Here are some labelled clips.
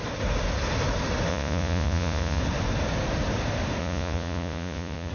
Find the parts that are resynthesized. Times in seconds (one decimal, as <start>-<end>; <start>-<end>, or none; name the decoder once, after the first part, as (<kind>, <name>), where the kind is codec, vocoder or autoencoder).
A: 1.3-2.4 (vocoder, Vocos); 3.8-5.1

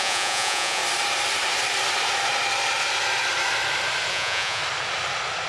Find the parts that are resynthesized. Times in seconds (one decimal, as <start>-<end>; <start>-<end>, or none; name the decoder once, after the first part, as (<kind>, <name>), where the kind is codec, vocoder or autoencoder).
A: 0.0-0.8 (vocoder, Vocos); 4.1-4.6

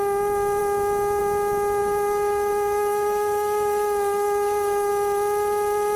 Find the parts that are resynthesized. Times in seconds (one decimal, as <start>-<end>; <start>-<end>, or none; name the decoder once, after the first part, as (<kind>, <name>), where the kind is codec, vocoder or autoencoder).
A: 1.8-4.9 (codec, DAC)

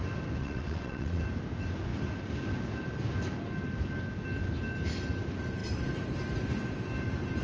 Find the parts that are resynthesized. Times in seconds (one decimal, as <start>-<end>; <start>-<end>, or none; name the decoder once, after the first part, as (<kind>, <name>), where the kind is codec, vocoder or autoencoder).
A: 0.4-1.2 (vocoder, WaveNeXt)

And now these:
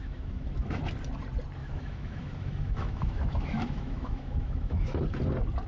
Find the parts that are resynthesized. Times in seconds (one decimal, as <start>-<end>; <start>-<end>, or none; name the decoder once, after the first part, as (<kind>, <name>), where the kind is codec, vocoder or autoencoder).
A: 0.0-0.8 (autoencoder, DAC-VAE); 1.6-5.0

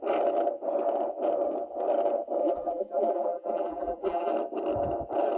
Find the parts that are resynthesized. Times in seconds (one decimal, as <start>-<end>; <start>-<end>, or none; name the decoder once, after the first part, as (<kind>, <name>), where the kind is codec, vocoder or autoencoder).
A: 2.4-4.3 (vocoder, BigVGAN v2)